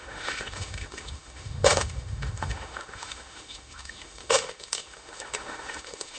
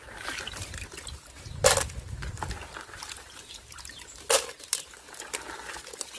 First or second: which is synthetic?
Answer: first